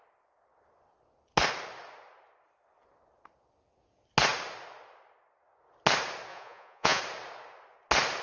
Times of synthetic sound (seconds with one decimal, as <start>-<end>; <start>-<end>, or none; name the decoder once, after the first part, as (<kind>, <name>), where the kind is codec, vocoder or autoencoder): 6.3-7.0 (vocoder, Vocos)